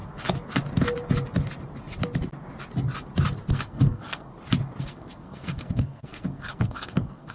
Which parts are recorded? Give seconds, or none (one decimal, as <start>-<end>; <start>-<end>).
0.0-3.5; 4.3-4.8